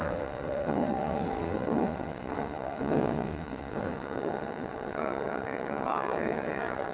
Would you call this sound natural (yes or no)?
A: no